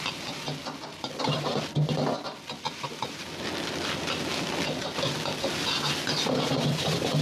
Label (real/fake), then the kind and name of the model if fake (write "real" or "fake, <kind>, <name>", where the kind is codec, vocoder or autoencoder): real